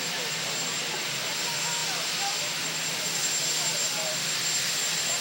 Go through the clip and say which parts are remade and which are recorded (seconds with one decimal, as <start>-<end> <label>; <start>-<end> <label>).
0.0-5.2 recorded